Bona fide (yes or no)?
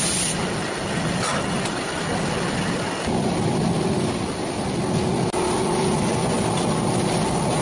yes